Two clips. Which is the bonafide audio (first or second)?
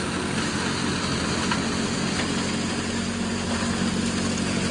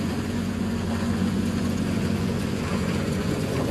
first